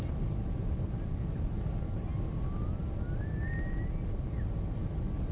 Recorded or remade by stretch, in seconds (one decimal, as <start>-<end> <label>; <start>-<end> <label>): 0.0-5.3 recorded